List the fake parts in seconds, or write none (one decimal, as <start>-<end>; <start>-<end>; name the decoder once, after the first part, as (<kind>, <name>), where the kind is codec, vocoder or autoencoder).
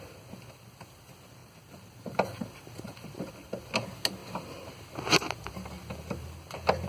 1.4-3.3 (vocoder, BigVGAN v2)